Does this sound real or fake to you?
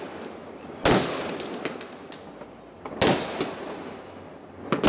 real